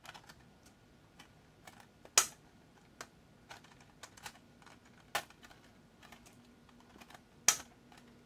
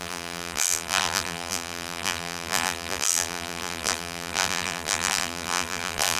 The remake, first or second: second